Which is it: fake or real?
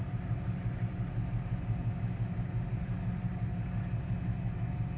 real